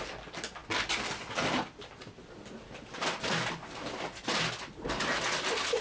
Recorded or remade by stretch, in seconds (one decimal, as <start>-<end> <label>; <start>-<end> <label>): 0.0-5.8 recorded